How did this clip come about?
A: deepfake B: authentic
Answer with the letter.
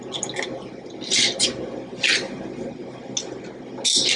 B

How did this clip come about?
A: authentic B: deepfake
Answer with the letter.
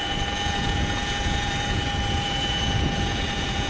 B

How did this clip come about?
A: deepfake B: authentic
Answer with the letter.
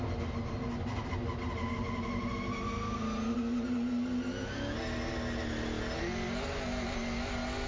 B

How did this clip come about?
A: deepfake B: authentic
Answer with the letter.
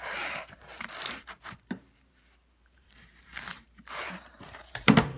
A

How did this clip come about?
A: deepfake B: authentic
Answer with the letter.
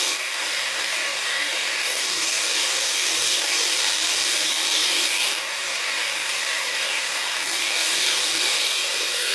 A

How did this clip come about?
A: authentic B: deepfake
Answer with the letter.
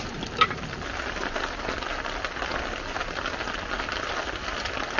A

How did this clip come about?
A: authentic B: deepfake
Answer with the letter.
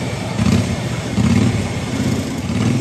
B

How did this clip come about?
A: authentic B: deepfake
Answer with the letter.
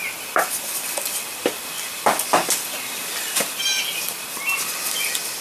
A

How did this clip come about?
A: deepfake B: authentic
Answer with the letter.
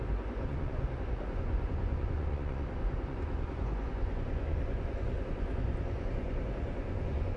A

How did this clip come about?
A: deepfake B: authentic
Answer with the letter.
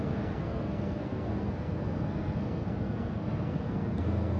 A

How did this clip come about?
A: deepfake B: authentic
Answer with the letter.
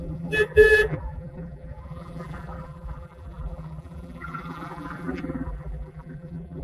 A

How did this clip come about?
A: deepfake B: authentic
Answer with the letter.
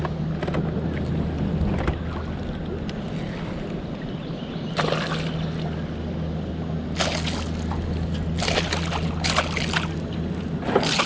B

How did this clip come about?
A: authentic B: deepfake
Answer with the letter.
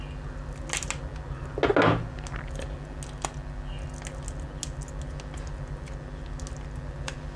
A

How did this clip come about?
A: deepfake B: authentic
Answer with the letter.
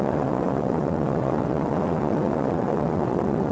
A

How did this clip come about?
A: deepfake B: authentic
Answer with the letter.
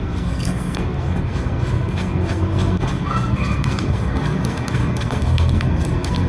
A